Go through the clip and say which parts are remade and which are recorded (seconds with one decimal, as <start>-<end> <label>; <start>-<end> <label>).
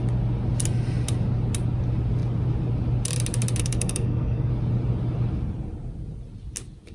0.0-3.6 recorded; 3.6-4.5 remade; 4.5-6.9 recorded